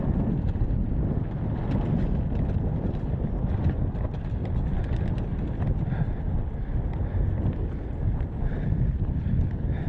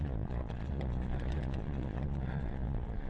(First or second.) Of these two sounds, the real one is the first